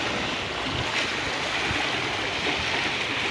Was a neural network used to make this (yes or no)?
no